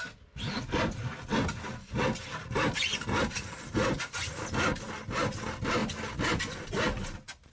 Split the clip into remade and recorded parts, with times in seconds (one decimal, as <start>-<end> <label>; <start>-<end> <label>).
0.0-2.9 recorded; 2.9-4.3 remade; 4.3-7.5 recorded